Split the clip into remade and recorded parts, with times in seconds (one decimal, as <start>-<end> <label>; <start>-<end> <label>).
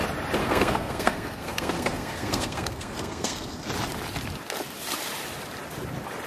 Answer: 0.0-0.4 recorded; 0.4-3.7 remade; 3.7-6.3 recorded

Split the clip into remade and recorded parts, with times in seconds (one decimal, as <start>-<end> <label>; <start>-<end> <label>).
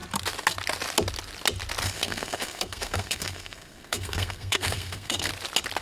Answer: 0.0-1.8 recorded; 1.8-5.3 remade; 5.3-5.8 recorded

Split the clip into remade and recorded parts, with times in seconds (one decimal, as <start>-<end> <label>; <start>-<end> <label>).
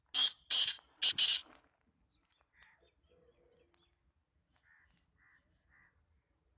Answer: 0.0-6.6 recorded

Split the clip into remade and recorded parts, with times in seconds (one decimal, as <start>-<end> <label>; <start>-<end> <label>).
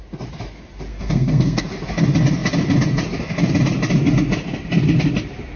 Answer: 0.0-0.9 recorded; 0.9-1.6 remade; 1.6-5.6 recorded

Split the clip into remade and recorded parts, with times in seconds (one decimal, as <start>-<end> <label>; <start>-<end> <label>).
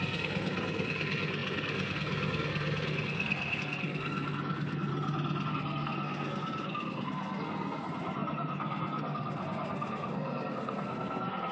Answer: 0.0-4.9 remade; 4.9-5.5 recorded; 5.5-11.5 remade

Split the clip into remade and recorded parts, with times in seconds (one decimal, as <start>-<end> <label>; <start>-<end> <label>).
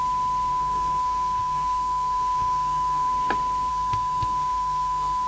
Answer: 0.0-0.5 recorded; 0.5-3.1 remade; 3.1-3.7 recorded; 3.7-5.3 remade